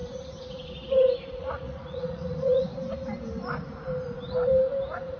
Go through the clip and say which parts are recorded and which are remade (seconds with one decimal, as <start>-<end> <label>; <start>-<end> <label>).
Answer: 0.0-1.4 recorded; 1.4-2.7 remade; 2.7-5.2 recorded